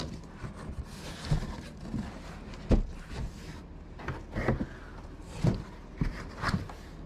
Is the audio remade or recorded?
recorded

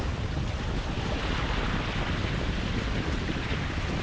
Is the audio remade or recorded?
remade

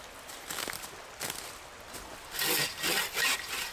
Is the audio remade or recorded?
recorded